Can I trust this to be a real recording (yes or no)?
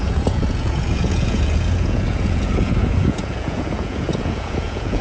no